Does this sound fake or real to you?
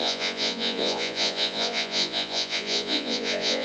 fake